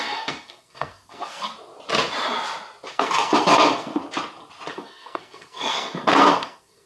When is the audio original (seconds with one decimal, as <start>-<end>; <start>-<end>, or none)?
1.5-2.9; 4.0-4.7